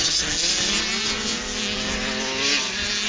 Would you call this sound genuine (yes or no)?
yes